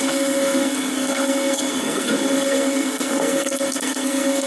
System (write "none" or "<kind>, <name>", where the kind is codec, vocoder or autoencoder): codec, SNAC